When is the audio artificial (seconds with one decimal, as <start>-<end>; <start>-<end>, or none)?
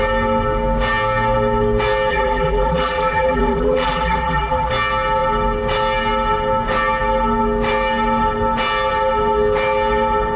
2.1-4.7